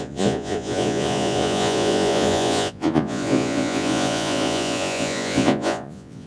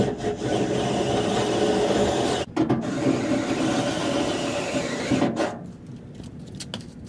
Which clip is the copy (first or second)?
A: first